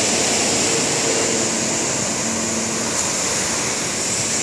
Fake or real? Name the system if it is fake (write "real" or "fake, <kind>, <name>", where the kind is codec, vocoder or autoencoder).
real